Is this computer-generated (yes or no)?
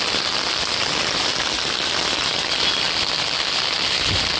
no